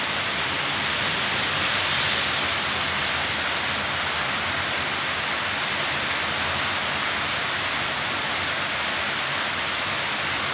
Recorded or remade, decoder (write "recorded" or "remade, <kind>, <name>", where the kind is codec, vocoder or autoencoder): recorded